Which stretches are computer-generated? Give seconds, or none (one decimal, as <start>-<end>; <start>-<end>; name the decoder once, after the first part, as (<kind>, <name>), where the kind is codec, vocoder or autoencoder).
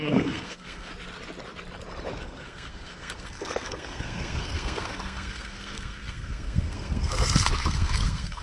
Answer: 0.0-0.9 (codec, SNAC); 2.2-8.4